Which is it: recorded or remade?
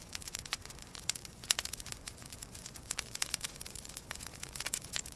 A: remade